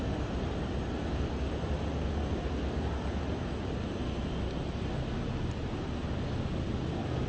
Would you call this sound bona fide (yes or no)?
yes